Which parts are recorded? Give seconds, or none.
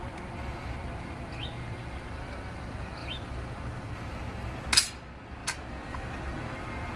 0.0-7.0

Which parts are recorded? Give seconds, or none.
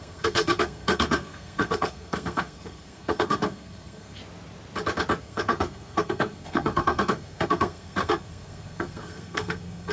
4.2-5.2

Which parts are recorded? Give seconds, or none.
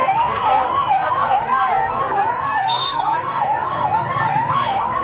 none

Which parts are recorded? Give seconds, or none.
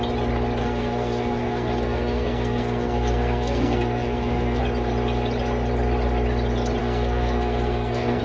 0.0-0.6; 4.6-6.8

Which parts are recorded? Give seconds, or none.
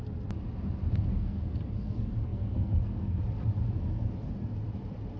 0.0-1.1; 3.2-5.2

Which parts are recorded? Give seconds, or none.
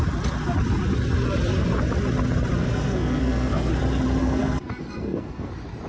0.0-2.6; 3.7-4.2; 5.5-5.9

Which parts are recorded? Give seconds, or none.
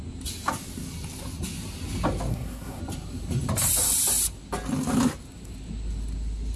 0.0-2.3; 2.8-6.6